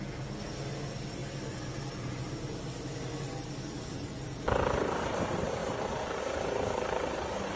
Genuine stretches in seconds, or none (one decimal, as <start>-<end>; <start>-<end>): 0.0-7.6